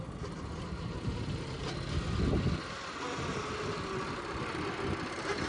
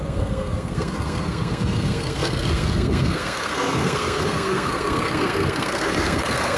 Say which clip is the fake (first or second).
second